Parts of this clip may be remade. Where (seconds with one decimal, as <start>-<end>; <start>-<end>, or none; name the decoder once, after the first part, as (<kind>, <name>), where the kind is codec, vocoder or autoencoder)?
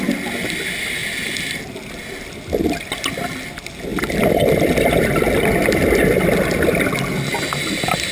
none